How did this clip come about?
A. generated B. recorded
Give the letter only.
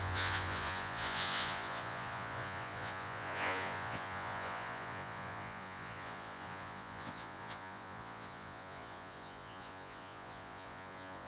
A